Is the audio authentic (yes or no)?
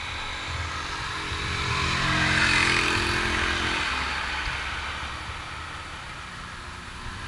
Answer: yes